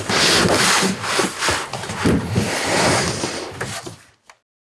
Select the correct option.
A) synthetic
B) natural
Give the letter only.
B